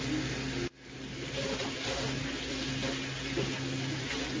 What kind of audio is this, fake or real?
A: real